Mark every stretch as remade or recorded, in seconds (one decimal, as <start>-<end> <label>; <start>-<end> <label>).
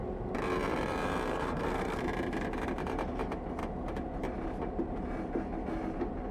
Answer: 0.0-1.3 recorded; 1.3-2.0 remade; 2.0-6.3 recorded